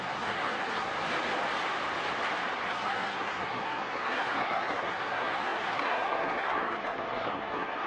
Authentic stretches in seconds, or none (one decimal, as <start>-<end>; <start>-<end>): 0.9-2.7